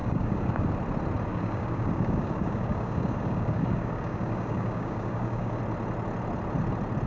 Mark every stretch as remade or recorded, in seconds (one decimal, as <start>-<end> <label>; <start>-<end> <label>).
0.0-0.7 remade; 0.7-1.3 recorded; 1.3-5.6 remade; 5.6-7.1 recorded